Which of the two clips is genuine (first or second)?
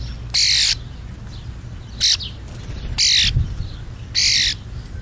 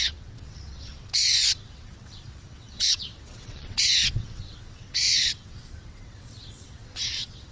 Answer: first